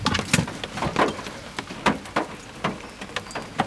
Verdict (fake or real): real